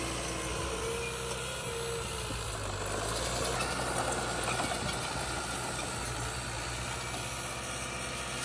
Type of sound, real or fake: real